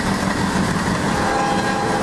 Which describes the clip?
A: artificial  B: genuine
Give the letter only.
B